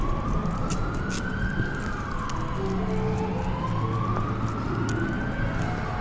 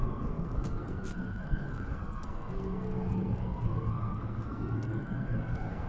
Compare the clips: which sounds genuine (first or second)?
first